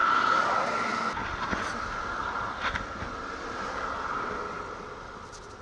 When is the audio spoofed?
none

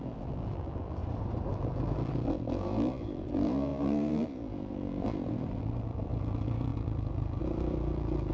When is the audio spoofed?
0.0-1.0 (vocoder, BigVGAN v2); 1.5-8.3

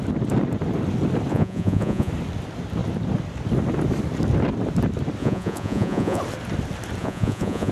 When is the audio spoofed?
1.3-2.1 (vocoder, Vocos); 5.2-6.2; 7.0-7.7

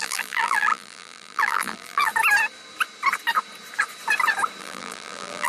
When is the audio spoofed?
0.0-2.1 (vocoder, BigVGAN v2); 4.6-5.5

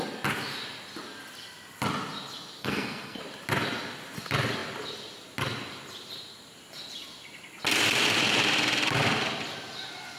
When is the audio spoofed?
2.6-3.2 (codec, SNAC)

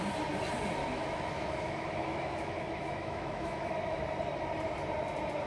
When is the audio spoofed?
0.8-4.0 (autoencoder, DAC-VAE)

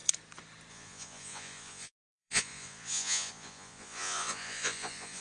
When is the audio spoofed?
0.7-5.2 (vocoder, Vocos)

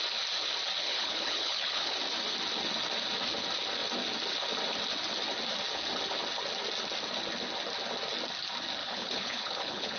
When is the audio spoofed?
0.8-1.9 (codec, HILCodec); 8.8-10.0